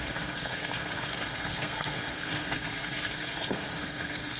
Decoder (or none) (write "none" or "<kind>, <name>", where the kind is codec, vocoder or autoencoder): codec, SNAC